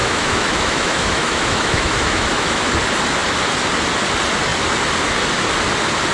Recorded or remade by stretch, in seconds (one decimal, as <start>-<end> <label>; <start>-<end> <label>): 0.0-2.7 remade; 2.7-6.1 recorded